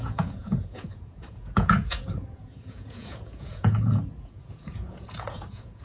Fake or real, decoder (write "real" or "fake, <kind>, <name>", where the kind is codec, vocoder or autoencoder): fake, vocoder, Vocos